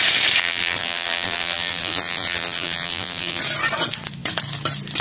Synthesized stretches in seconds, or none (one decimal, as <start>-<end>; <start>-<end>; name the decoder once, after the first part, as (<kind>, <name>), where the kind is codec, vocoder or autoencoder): 0.4-3.4 (vocoder, BigVGAN v2)